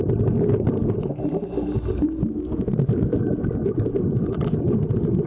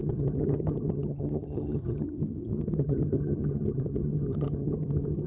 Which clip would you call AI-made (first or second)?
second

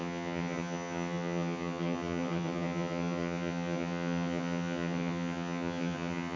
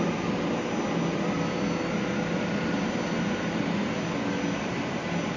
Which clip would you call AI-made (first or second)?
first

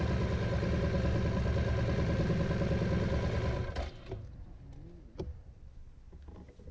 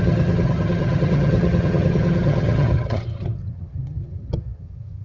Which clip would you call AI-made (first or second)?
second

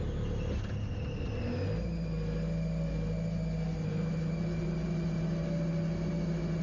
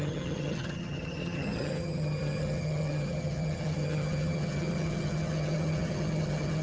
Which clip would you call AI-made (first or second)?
second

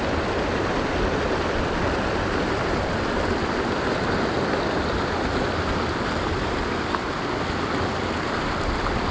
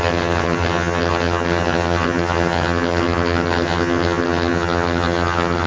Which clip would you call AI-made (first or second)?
second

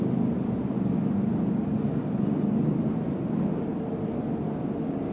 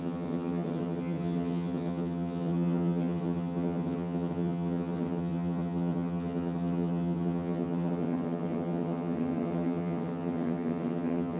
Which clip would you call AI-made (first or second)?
second